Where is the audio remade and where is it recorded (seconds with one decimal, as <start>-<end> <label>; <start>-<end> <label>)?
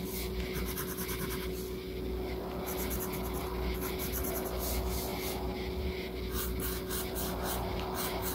0.0-8.3 recorded